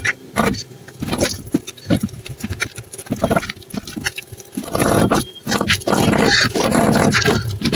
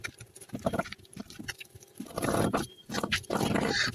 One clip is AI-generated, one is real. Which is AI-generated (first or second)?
second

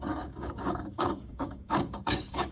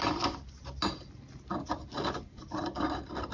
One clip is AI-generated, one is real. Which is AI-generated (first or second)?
first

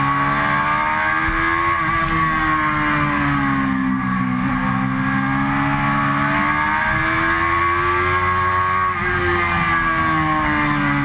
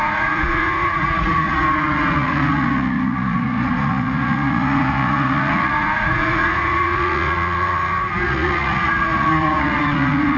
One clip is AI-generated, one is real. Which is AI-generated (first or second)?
second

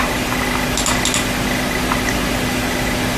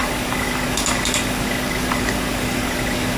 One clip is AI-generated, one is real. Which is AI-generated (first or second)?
second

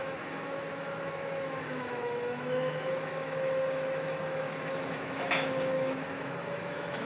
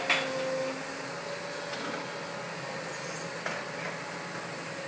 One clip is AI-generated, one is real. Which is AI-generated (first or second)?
first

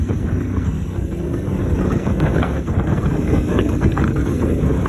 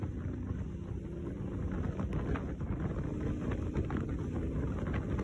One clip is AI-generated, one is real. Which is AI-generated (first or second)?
first